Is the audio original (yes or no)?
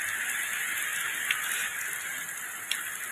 yes